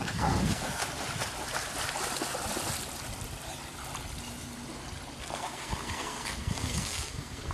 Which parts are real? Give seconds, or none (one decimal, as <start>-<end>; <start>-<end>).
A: 0.8-5.2